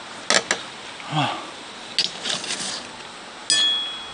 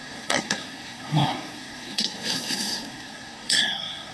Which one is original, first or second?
first